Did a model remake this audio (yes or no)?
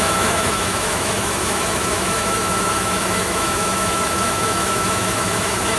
yes